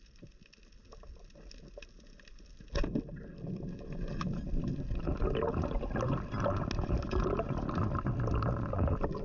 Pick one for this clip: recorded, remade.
recorded